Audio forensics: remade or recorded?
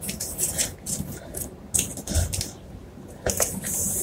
recorded